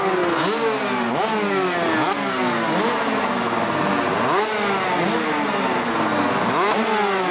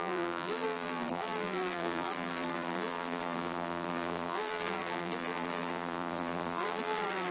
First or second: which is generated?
second